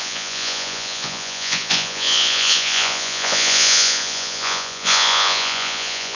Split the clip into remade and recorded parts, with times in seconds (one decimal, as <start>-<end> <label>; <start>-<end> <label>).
0.0-6.1 remade